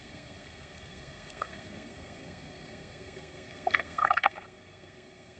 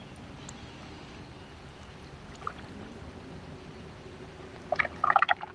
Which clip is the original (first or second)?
second